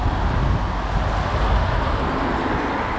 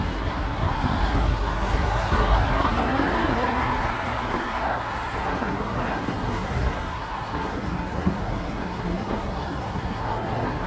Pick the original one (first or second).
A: first